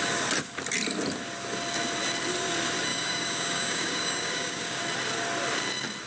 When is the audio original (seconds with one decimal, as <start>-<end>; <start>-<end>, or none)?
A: 0.0-2.9; 4.8-6.1